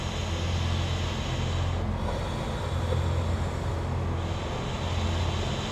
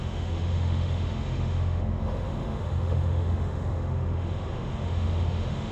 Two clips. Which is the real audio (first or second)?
first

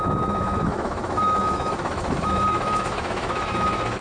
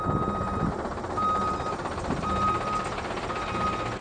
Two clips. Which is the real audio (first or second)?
second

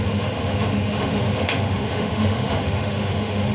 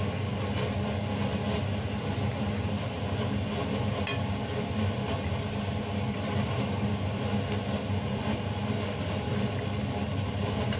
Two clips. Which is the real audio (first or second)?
second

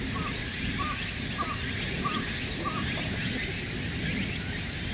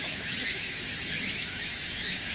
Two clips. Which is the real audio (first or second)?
first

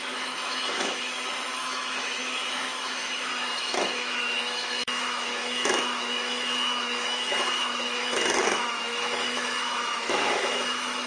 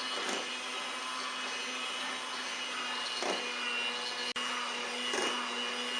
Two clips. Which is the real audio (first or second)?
second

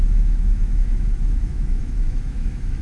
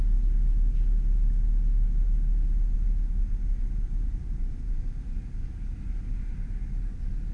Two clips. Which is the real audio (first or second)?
second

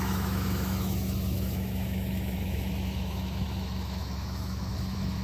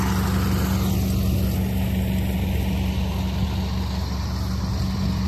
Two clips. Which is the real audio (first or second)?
second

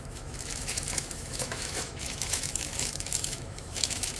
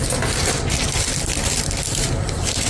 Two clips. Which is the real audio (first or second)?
second